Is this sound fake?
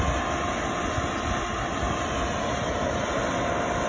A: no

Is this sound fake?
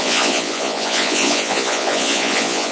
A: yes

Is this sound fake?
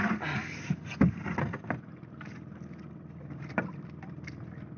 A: no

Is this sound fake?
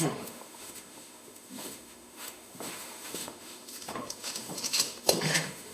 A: yes